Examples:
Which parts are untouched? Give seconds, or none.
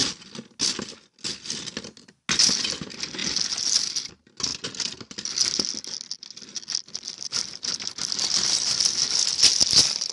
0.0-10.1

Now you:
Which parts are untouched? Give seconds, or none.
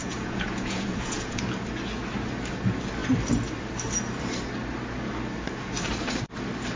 1.4-6.8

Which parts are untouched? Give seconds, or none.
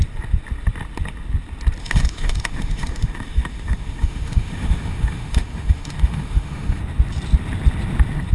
0.0-1.8; 6.8-8.3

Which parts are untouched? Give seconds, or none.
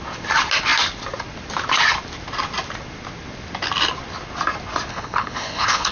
0.0-4.9